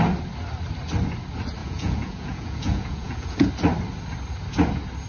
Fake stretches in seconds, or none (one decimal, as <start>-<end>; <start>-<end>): 1.6-3.5